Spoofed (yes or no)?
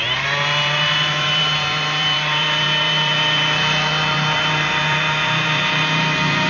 yes